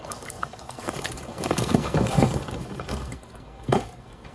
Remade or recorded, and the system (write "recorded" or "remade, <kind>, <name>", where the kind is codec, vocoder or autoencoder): remade, codec, SNAC